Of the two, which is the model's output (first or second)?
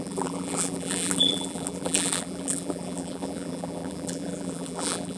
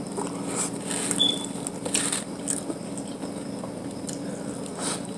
first